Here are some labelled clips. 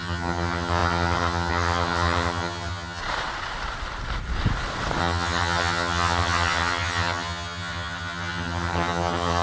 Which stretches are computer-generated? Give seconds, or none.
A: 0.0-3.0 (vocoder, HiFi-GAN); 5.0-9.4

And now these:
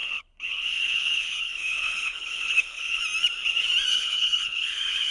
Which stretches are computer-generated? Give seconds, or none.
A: 0.0-3.0 (codec, HILCodec); 3.9-5.1

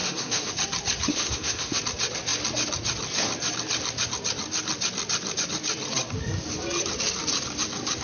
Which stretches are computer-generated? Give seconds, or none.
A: 0.0-0.5 (autoencoder, DAC-VAE); 1.1-1.8

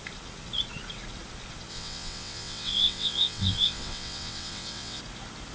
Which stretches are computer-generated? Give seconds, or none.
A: 1.7-5.0 (vocoder, WaveNeXt)